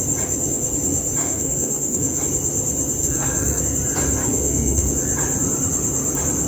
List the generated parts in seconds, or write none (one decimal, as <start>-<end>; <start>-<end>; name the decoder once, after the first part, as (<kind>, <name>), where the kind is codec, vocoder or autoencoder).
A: 1.2-2.2 (codec, SNAC); 3.0-3.6; 4.2-4.9